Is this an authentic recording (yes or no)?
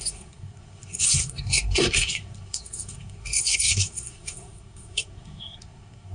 no